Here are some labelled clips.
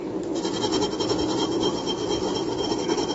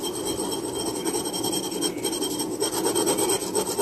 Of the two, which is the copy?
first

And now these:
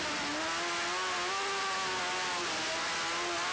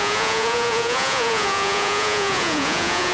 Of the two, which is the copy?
second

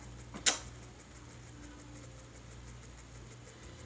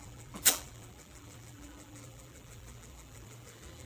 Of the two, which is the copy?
second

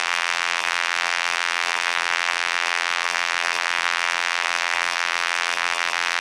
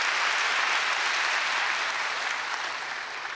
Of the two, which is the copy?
first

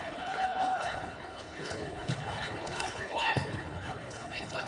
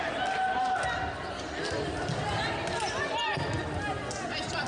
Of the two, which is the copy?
first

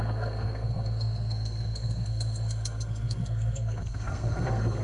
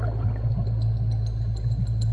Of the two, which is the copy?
first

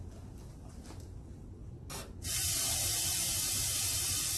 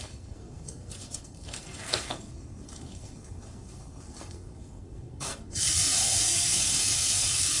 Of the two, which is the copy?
second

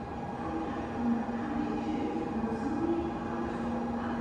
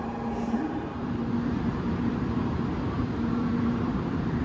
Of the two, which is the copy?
second